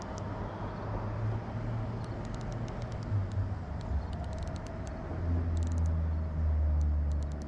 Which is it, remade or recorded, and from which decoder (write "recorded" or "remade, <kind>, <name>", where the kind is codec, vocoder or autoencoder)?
recorded